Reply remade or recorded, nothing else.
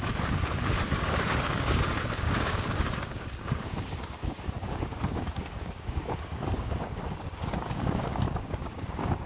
remade